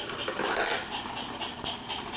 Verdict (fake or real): real